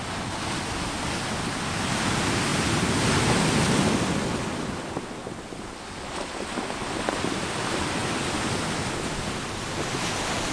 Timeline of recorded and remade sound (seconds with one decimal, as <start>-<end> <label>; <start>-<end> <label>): 0.0-10.5 recorded